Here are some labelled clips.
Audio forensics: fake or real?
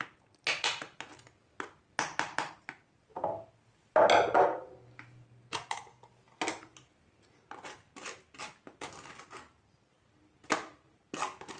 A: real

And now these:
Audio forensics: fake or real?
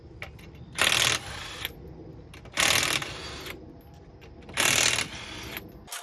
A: real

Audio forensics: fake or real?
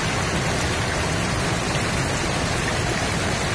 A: real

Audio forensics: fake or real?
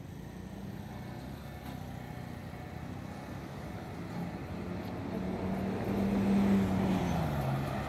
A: real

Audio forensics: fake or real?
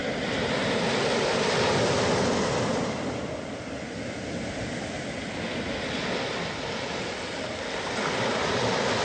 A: real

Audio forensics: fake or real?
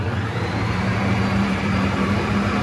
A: fake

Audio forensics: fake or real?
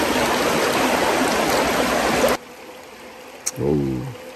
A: real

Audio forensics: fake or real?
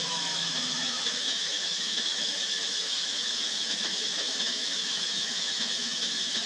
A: fake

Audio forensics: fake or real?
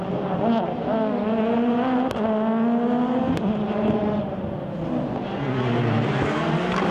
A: real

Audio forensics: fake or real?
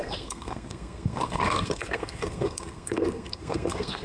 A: fake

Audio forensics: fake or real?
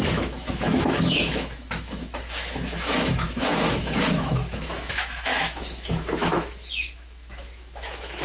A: fake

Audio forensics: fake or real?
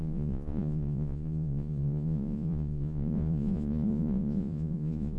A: fake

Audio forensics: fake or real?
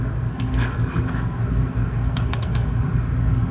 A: fake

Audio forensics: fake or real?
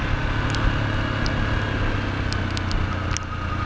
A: real